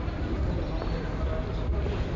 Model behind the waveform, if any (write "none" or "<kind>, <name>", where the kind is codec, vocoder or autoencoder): none